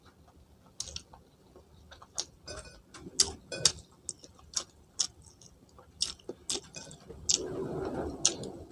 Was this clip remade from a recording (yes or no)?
no